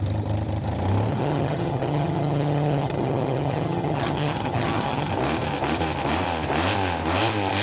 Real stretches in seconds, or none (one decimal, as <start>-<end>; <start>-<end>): 0.0-1.1; 5.1-7.6